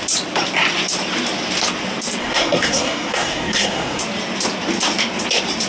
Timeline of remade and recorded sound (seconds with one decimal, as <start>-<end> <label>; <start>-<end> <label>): 0.0-2.2 recorded; 2.2-4.0 remade; 4.0-5.7 recorded